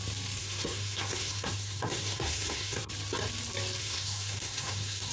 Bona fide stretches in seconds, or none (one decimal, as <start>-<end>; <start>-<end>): 0.0-0.4; 2.9-3.8